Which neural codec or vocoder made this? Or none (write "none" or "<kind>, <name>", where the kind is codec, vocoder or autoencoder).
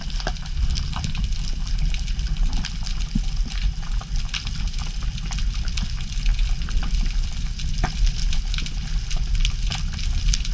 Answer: none